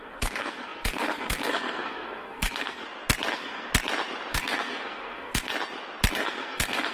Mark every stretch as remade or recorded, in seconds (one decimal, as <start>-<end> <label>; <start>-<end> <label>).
0.0-2.8 remade; 2.8-3.3 recorded; 3.3-3.7 remade; 3.7-4.3 recorded; 4.3-5.5 remade; 5.5-6.1 recorded; 6.1-6.9 remade